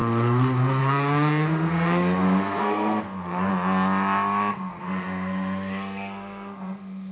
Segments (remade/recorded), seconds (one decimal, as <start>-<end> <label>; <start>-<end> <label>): 0.0-3.5 remade; 3.5-4.5 recorded; 4.5-7.1 remade